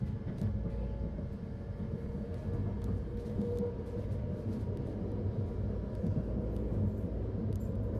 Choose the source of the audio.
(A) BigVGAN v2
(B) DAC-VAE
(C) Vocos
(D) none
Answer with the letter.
D